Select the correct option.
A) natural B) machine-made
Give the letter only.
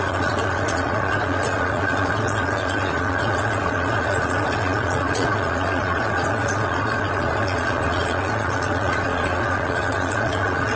B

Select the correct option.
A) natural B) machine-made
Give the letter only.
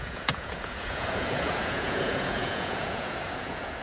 B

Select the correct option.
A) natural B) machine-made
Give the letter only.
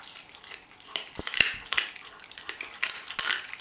A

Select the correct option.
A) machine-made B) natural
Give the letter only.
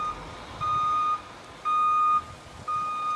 B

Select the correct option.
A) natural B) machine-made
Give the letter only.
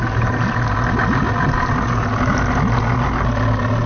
A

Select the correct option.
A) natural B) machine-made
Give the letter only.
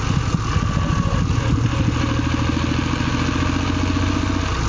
A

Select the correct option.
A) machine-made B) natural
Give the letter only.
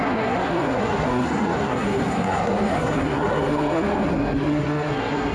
A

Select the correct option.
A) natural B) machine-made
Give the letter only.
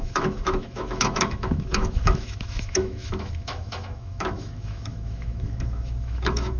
B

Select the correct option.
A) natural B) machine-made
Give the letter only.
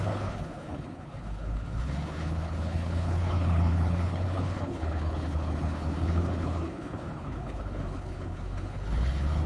B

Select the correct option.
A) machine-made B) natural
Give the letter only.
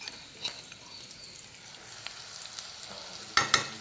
B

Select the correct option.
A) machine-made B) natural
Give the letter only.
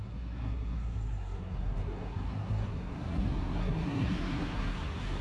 A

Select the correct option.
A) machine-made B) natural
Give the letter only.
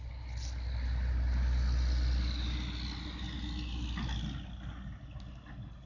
B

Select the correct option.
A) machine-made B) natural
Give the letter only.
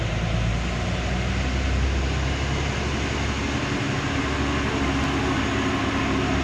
B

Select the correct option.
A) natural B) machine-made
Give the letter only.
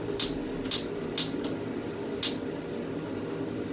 A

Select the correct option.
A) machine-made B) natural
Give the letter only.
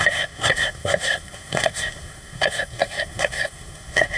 A